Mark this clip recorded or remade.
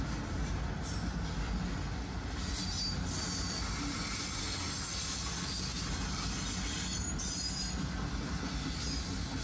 recorded